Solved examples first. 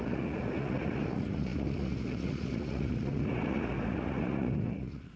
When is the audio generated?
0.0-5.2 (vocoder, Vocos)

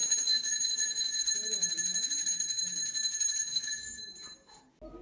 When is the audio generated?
0.0-1.2 (autoencoder, DAC-VAE); 3.4-4.0

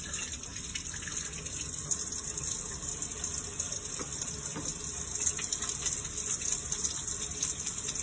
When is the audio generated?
none

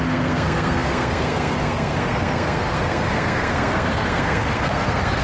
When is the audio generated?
0.0-5.2 (codec, SNAC)

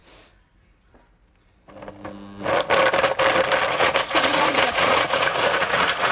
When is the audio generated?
3.7-6.1 (vocoder, Vocos)